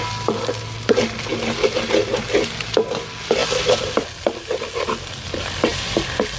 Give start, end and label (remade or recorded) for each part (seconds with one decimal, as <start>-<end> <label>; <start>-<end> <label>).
0.0-6.4 recorded